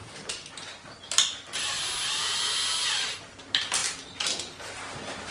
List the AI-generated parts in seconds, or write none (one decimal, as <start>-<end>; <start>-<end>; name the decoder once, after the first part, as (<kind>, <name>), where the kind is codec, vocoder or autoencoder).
none